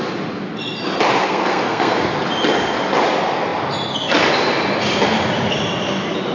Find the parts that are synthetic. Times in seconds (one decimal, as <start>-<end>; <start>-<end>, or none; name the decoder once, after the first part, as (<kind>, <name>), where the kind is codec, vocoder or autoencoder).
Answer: 1.2-2.2 (codec, SNAC)